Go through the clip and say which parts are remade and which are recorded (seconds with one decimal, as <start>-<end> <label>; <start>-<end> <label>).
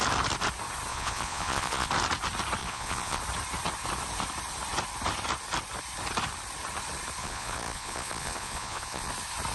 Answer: 0.0-0.9 recorded; 0.9-1.9 remade; 1.9-2.6 recorded; 2.6-3.2 remade; 3.2-7.2 recorded; 7.2-9.1 remade; 9.1-9.5 recorded